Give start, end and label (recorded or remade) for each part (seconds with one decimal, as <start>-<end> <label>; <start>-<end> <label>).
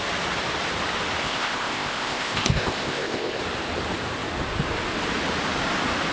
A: 0.0-1.2 recorded; 1.2-3.4 remade; 3.4-6.1 recorded